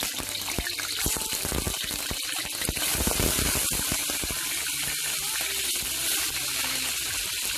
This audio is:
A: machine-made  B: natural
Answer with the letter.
B